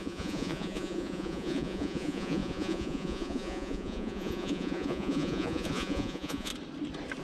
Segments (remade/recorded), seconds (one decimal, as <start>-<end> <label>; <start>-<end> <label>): 0.0-6.5 remade; 6.5-7.2 recorded